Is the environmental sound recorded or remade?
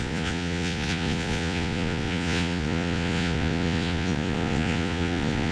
remade